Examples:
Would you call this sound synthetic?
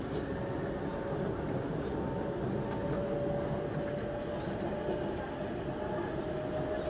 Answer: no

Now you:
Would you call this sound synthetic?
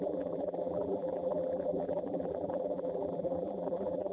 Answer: yes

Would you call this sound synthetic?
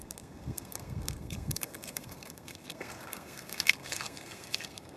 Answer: yes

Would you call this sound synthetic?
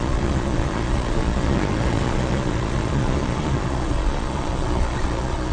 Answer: yes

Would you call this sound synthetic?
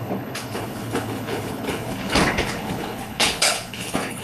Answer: yes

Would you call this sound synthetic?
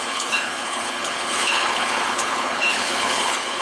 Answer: yes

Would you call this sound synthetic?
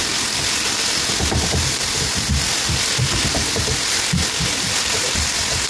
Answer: no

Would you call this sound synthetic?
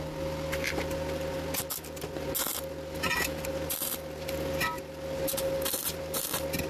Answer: no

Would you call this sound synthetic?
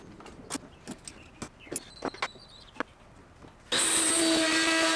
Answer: no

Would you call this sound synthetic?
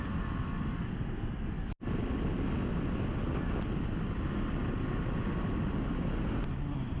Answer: no